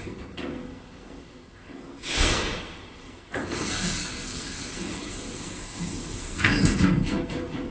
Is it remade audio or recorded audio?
remade